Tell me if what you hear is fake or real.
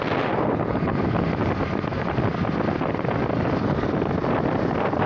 real